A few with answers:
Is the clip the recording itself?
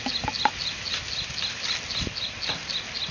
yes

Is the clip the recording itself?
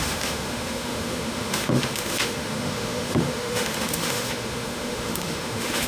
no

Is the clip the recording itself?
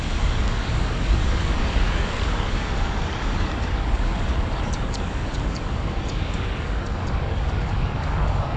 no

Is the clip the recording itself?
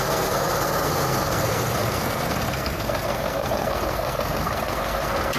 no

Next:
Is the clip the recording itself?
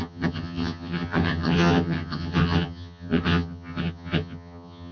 no